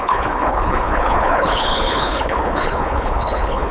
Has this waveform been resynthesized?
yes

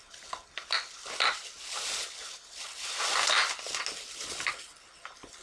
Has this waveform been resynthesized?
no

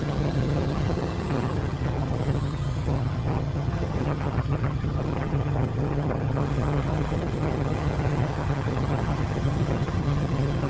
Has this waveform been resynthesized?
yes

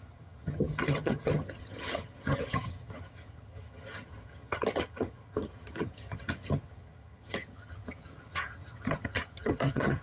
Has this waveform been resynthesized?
yes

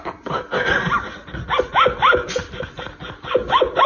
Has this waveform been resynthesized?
no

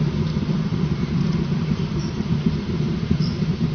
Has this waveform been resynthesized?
yes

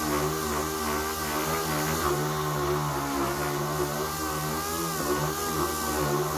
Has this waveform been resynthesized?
no